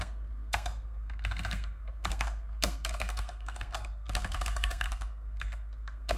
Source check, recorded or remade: remade